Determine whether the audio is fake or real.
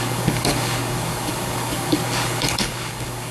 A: fake